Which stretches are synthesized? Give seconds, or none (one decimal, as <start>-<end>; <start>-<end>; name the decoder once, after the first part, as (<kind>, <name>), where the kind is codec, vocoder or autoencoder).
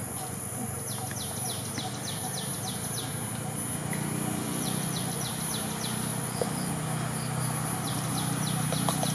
0.0-0.7 (vocoder, Vocos); 4.4-5.3; 6.1-6.7